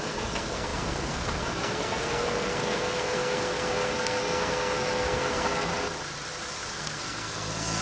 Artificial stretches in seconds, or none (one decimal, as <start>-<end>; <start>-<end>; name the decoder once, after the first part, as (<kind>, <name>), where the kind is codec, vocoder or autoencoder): 0.0-5.7 (codec, SNAC); 6.7-7.8

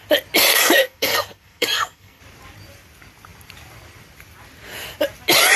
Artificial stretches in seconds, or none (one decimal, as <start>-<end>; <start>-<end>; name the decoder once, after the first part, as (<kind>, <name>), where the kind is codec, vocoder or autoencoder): 0.5-2.2 (codec, SNAC)

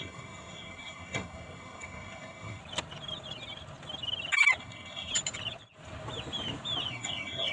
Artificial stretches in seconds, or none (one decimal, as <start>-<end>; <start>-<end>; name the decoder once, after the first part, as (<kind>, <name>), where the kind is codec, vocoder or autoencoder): 0.0-2.6 (codec, SNAC); 4.6-5.1; 6.9-7.5

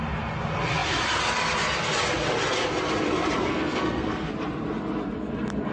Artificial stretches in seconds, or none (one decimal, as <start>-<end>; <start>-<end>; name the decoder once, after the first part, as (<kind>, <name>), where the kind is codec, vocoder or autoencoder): 3.5-4.3 (codec, SNAC)

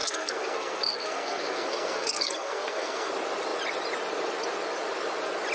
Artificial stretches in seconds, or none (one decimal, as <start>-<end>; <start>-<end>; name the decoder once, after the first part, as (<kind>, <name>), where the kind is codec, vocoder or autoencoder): 0.0-3.1 (codec, SNAC)

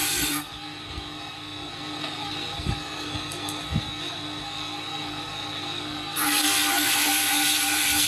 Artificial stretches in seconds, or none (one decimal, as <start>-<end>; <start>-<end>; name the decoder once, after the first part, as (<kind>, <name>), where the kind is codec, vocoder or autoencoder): 0.0-8.1 (codec, SNAC)

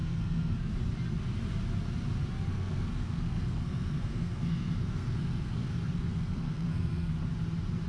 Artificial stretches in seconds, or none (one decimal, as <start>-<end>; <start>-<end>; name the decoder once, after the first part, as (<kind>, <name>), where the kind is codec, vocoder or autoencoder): 0.0-0.7 (codec, SNAC); 2.5-7.2